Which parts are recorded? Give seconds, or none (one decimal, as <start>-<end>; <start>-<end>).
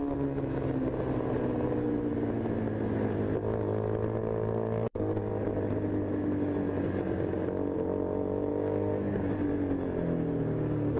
0.0-4.2; 5.2-8.5; 9.3-11.0